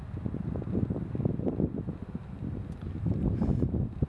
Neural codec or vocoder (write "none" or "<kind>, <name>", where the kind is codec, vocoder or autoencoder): none